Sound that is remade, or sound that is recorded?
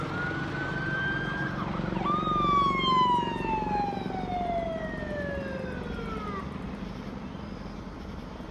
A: recorded